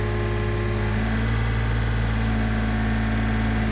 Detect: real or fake real